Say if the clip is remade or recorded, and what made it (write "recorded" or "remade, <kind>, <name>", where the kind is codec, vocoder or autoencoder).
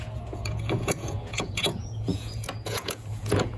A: remade, vocoder, Vocos